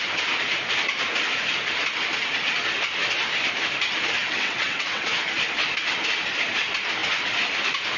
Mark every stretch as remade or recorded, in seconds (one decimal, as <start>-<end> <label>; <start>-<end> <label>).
0.0-4.2 recorded; 4.2-5.1 remade; 5.1-8.0 recorded